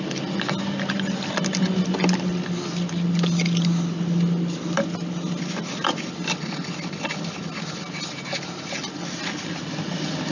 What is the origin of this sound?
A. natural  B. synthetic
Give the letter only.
A